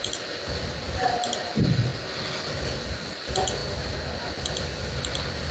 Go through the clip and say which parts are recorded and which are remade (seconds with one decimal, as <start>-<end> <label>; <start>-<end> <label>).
0.0-5.5 recorded